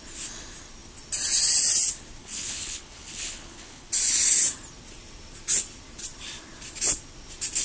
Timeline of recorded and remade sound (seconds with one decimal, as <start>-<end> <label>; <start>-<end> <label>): 0.0-2.2 recorded; 2.2-3.9 remade; 3.9-7.6 recorded